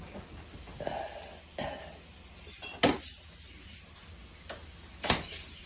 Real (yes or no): yes